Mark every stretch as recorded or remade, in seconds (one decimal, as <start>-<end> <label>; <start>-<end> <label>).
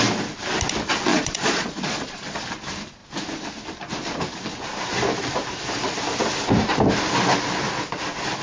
0.0-1.1 recorded; 1.1-2.4 remade; 2.4-8.4 recorded